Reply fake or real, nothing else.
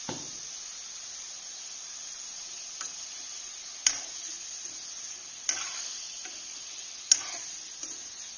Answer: real